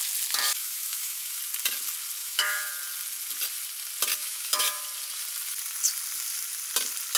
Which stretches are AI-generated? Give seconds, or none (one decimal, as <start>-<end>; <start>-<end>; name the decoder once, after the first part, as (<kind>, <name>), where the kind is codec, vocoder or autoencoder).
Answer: 0.5-1.4 (autoencoder, DAC-VAE); 2.2-2.7; 4.2-4.8